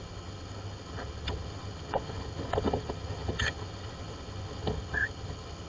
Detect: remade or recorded remade